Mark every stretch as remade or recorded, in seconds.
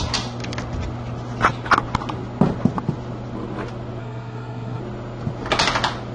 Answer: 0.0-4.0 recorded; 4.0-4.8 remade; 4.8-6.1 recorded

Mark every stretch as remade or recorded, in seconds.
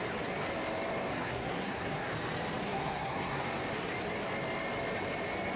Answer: 0.0-1.1 recorded; 1.1-2.1 remade; 2.1-2.6 recorded; 2.6-3.4 remade; 3.4-5.6 recorded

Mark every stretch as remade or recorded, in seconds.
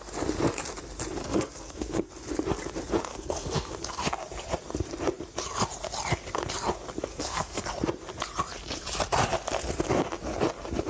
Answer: 0.0-1.2 recorded; 1.2-2.1 remade; 2.1-3.1 recorded; 3.1-3.7 remade; 3.7-7.1 recorded; 7.1-7.6 remade; 7.6-10.9 recorded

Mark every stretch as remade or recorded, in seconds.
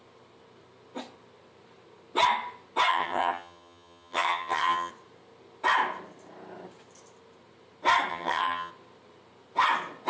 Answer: 0.0-2.9 recorded; 2.9-4.9 remade; 4.9-8.1 recorded; 8.1-8.7 remade; 8.7-10.1 recorded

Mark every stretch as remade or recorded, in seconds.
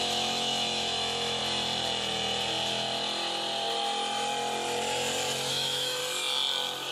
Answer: 0.0-1.4 remade; 1.4-5.5 recorded; 5.5-6.0 remade; 6.0-6.9 recorded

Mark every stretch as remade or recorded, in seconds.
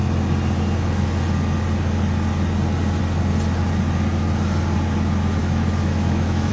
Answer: 0.0-5.4 recorded; 5.4-6.5 remade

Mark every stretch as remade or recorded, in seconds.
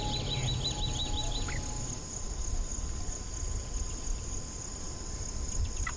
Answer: 0.0-6.0 recorded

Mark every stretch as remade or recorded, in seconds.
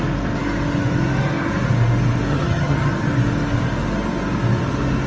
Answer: 0.0-2.3 recorded; 2.3-2.9 remade; 2.9-5.1 recorded